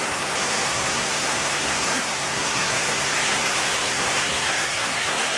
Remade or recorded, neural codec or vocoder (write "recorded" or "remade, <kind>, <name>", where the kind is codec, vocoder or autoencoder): remade, codec, SNAC